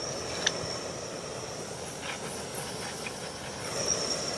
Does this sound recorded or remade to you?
recorded